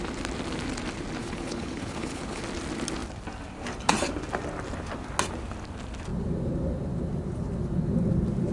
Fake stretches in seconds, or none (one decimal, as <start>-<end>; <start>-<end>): 1.2-2.4